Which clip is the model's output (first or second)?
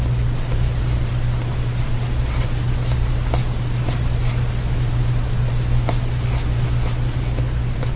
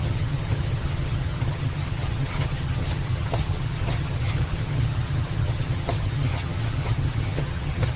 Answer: second